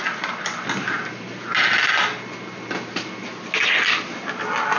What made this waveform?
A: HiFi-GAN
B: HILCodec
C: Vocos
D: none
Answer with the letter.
D